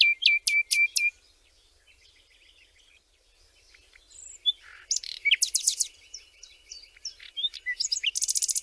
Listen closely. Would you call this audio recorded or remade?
recorded